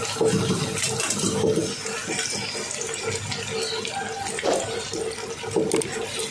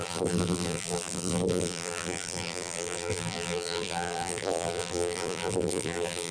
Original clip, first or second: first